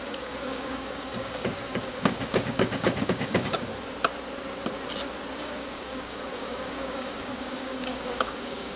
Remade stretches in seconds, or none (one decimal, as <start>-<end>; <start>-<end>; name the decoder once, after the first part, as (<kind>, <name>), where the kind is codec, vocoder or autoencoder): 0.0-3.7 (codec, DAC); 5.3-8.8